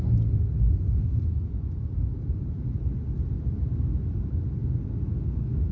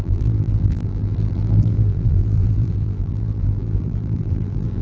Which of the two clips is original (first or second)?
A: first